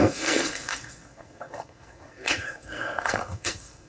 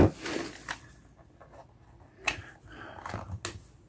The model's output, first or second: first